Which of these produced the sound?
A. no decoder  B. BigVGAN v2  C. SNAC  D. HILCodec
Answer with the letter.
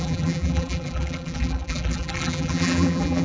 B